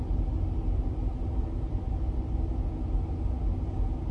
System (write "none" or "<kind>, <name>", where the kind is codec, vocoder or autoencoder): none